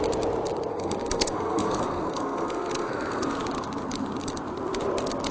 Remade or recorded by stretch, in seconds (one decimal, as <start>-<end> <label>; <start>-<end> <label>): 0.0-0.7 recorded; 0.7-3.3 remade; 3.3-5.3 recorded